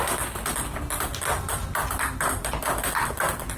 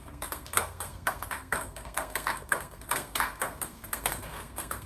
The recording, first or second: first